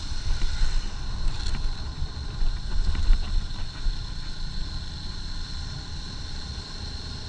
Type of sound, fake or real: real